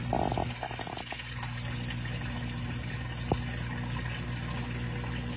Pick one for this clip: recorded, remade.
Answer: recorded